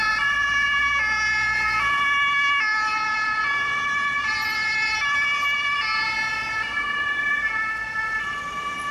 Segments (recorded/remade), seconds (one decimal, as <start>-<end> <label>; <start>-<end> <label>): 0.0-8.9 recorded